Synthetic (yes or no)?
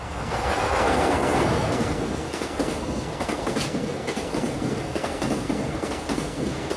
yes